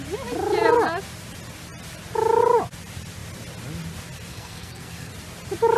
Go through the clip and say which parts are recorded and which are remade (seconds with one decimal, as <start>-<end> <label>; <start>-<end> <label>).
0.0-4.3 recorded; 4.3-5.1 remade; 5.1-5.8 recorded